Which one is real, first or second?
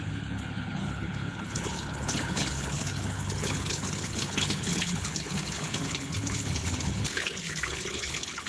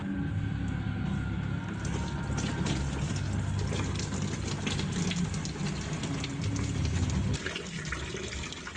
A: second